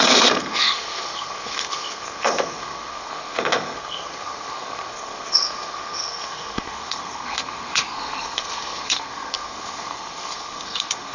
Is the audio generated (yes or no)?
yes